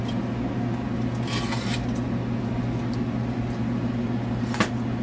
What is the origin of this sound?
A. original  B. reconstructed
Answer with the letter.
A